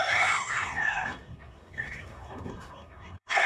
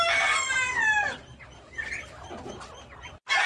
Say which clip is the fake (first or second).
first